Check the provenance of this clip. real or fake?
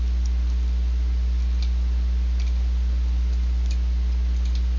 real